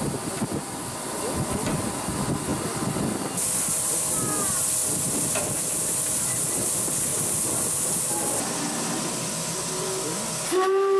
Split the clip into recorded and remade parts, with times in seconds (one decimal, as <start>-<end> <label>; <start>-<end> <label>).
0.0-7.1 recorded; 7.1-8.5 remade; 8.5-11.0 recorded